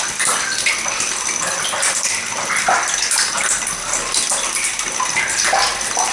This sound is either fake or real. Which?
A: real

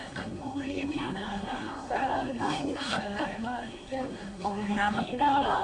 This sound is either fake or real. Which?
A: fake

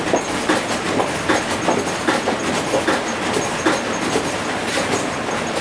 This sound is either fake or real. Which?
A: real